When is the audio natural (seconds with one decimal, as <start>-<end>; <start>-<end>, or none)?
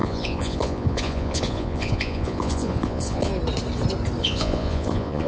3.3-4.2